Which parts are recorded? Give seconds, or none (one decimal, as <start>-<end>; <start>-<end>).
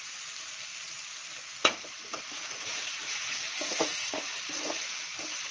0.0-1.6; 4.9-5.5